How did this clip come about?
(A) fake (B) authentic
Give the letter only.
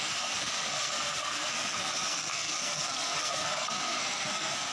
A